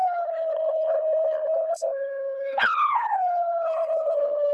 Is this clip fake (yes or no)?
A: yes